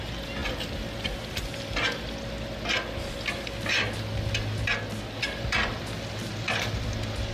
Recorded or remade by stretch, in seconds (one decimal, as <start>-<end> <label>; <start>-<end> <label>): 0.0-7.3 recorded